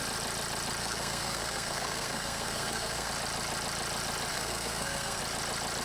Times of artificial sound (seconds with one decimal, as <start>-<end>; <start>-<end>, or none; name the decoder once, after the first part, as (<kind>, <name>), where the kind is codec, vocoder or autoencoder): 0.8-3.1 (codec, SNAC); 4.3-5.2